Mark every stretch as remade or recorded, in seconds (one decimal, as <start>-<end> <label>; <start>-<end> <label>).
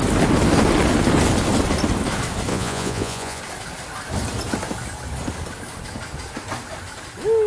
0.0-2.5 recorded; 2.5-3.4 remade; 3.4-7.5 recorded